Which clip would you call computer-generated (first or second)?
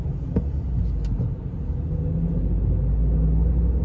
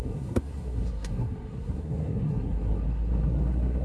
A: second